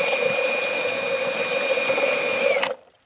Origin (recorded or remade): recorded